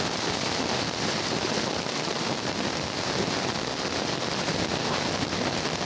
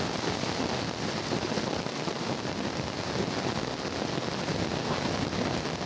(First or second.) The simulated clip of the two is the first